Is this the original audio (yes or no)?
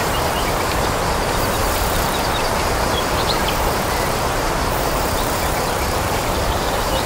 no